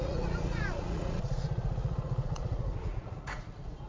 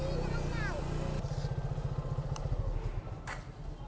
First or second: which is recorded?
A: second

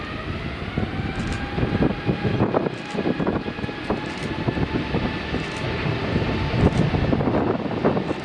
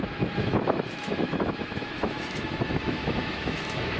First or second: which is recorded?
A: first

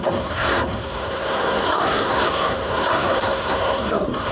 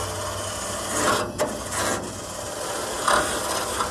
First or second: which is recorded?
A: second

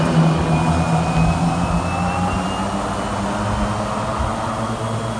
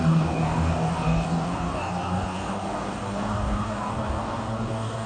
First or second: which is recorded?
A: first